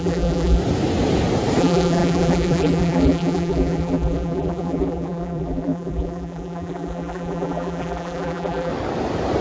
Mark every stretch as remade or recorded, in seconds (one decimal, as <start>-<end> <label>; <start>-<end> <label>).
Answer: 0.0-0.6 remade; 0.6-1.6 recorded; 1.6-8.7 remade; 8.7-9.4 recorded